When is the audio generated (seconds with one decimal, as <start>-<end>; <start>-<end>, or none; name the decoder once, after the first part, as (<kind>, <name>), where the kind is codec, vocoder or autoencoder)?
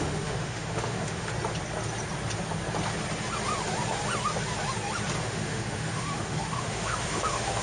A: 0.0-1.3 (autoencoder, DAC-VAE); 5.2-7.6